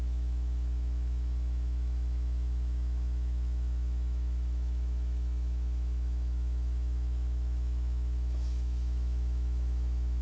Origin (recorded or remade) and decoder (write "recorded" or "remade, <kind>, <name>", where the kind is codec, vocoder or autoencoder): remade, autoencoder, DAC-VAE